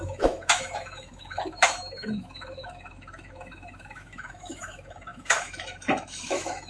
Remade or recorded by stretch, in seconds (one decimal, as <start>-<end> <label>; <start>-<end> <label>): 0.0-6.7 remade